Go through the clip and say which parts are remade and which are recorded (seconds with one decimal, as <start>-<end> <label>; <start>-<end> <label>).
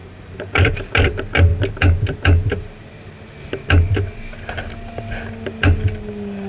0.0-0.8 remade; 0.8-6.5 recorded